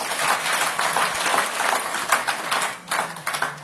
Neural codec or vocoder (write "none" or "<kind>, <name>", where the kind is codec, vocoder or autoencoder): none